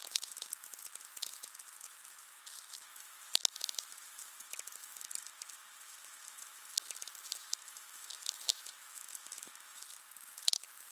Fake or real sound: fake